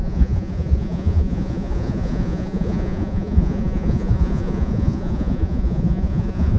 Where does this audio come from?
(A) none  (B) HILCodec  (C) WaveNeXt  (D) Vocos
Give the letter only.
D